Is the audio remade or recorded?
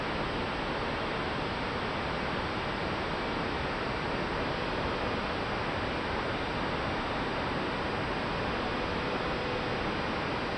recorded